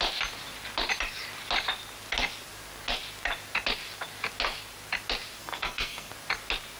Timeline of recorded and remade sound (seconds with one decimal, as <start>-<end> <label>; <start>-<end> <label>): 0.0-5.4 recorded; 5.4-6.1 remade; 6.1-6.8 recorded